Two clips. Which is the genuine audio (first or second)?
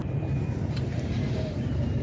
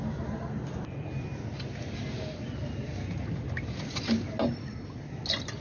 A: second